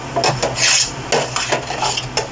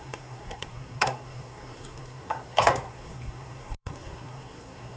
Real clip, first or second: first